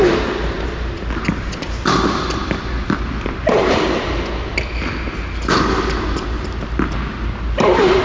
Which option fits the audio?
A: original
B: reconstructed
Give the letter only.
A